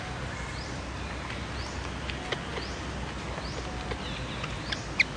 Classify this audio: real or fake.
real